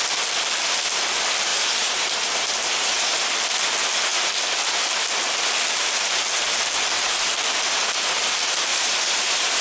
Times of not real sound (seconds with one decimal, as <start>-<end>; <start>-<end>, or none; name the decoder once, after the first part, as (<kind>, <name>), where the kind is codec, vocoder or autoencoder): 1.5-3.2 (vocoder, BigVGAN v2); 8.7-9.6